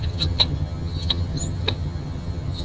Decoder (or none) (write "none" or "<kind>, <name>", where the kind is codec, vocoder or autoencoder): vocoder, HiFi-GAN